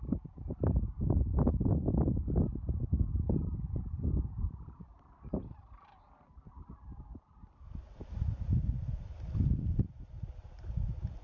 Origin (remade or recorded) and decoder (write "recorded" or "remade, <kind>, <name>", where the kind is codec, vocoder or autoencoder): remade, vocoder, BigVGAN v2